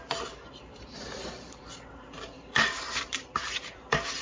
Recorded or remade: remade